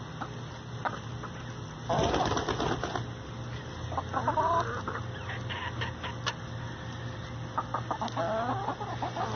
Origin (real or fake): real